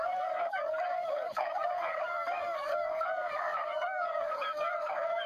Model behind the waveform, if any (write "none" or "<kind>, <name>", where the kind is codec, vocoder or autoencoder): codec, DAC